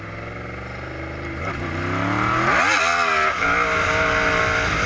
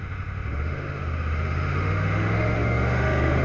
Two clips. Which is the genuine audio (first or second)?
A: first